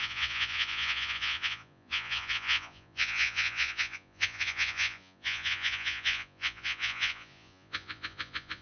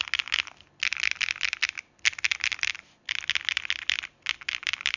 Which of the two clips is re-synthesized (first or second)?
first